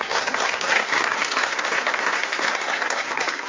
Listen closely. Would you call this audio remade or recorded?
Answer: remade